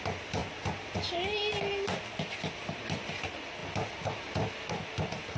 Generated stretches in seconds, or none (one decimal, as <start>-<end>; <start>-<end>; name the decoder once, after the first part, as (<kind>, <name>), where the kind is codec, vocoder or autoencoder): none